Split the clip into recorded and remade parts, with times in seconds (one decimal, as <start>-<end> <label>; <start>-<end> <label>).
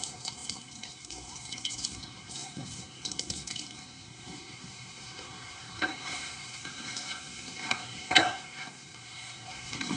0.0-10.0 remade